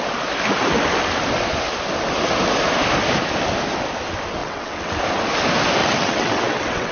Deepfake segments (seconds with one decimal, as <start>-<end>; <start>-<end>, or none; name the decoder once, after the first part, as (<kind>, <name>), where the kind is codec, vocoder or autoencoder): 4.4-5.0 (vocoder, WaveNeXt); 5.8-6.9